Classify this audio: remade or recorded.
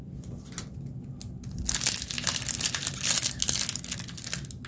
recorded